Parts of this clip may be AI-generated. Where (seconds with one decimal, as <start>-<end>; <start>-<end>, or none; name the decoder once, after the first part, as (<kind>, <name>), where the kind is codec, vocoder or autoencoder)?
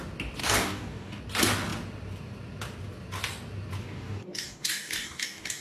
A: 0.4-1.2 (codec, DAC); 3.8-5.6